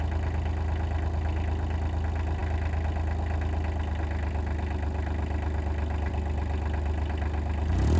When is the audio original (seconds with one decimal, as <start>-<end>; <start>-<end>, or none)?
0.0-8.0